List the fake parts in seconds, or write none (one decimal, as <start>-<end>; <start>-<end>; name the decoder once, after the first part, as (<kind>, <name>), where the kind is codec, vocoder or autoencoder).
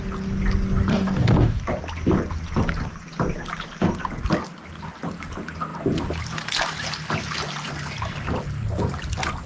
0.9-1.6 (codec, DAC)